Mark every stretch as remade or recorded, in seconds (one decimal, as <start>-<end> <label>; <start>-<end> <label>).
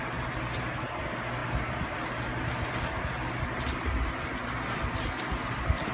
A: 0.0-5.9 recorded